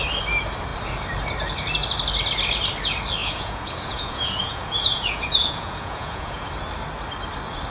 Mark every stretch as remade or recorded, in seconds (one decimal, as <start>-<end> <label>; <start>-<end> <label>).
0.0-3.2 recorded; 3.2-6.5 remade; 6.5-7.7 recorded